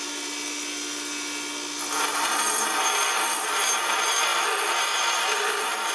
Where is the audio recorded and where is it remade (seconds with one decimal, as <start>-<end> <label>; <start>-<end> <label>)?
0.0-5.9 recorded